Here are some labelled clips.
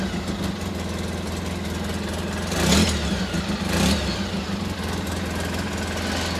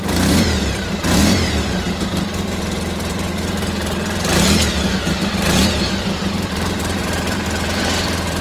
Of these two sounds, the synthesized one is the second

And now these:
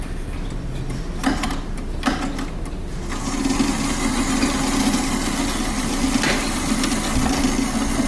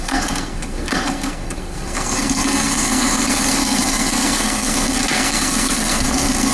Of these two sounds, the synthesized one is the second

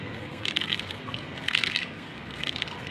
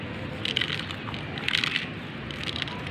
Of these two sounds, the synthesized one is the first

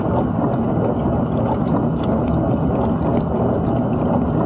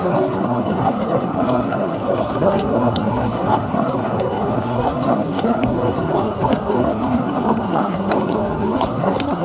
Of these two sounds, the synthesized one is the second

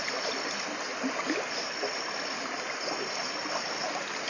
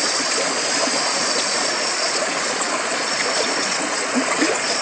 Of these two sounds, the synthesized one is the second